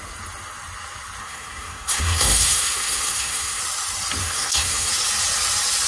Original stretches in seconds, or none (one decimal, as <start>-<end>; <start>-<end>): 0.0-1.2; 3.6-4.2; 4.9-5.9